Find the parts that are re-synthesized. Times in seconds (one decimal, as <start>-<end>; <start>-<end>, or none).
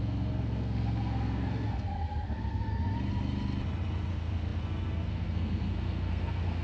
0.0-2.7; 4.1-6.6